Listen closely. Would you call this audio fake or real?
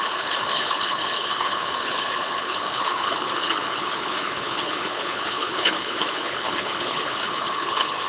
fake